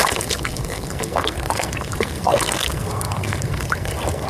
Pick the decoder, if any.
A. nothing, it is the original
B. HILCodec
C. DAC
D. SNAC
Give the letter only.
D